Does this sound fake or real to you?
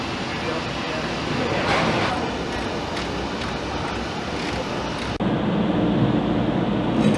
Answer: real